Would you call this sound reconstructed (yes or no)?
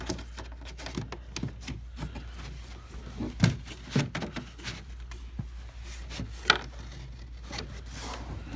no